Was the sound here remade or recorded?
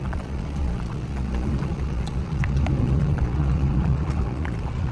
remade